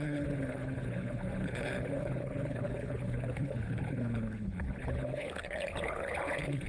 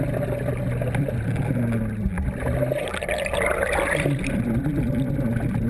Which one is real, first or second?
second